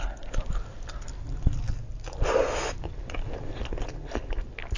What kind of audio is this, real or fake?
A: real